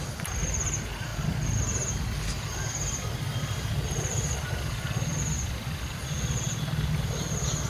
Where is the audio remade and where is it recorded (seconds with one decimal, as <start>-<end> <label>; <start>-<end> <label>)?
0.0-7.7 recorded